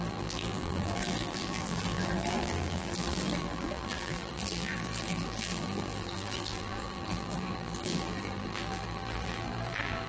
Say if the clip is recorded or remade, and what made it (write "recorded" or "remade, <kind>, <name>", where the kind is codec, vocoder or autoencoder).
remade, vocoder, BigVGAN v2